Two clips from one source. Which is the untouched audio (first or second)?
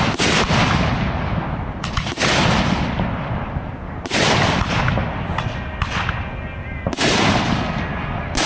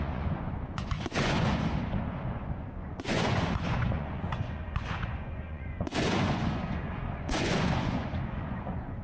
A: first